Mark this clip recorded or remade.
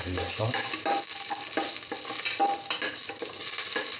recorded